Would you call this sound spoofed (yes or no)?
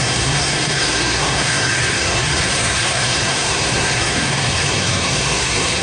yes